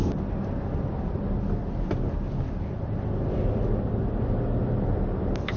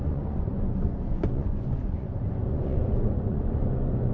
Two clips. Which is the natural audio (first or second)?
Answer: first